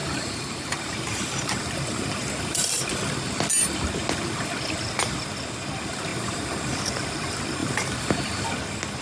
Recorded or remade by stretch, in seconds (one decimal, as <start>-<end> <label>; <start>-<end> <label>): 0.0-2.8 remade; 2.8-6.1 recorded; 6.1-6.6 remade; 6.6-7.6 recorded; 7.6-8.1 remade; 8.1-9.0 recorded